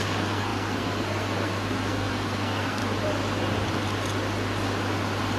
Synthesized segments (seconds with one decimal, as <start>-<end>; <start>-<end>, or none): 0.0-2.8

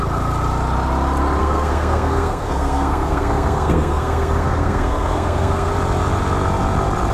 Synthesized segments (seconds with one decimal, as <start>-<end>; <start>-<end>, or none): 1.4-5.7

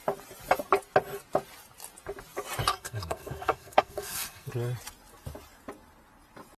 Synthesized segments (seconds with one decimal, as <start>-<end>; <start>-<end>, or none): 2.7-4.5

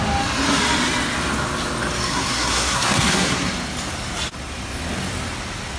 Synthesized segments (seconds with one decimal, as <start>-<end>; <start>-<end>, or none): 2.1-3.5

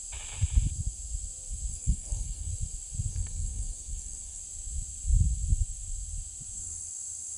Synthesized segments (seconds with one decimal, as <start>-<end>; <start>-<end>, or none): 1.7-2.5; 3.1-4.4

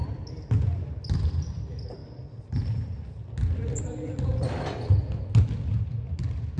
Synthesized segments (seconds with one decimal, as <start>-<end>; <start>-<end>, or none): none